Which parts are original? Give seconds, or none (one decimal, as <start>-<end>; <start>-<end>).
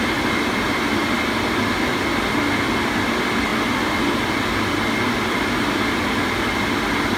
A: 0.0-1.0; 1.6-7.2